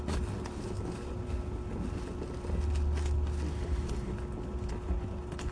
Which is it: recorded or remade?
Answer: recorded